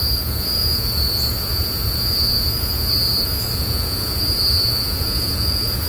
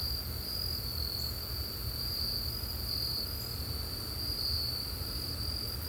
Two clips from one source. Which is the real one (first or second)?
second